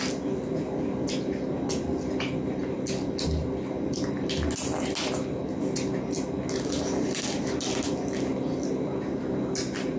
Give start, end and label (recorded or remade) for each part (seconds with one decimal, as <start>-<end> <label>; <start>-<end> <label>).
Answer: 0.0-10.0 recorded